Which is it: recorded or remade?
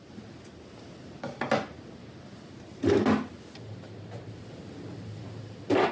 recorded